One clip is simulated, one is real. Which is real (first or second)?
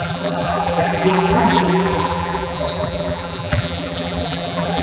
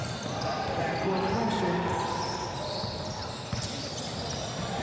second